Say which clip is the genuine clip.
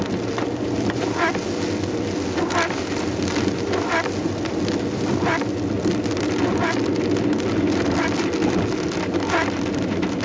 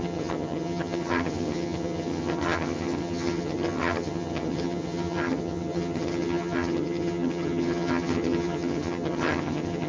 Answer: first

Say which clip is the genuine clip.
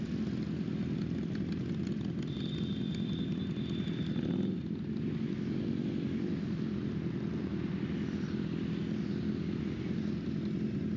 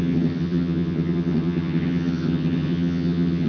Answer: first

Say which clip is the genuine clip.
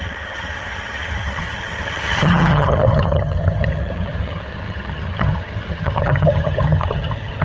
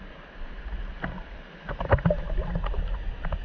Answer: second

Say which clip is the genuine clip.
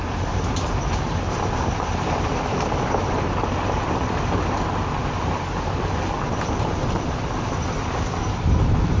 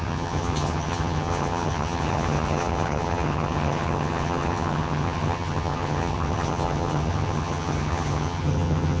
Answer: first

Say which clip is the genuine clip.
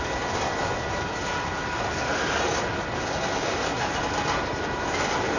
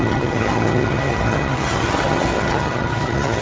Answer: first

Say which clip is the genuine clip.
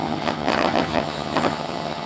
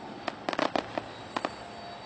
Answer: second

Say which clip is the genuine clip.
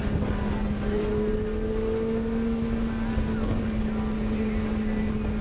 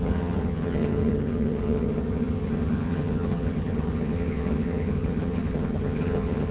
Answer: first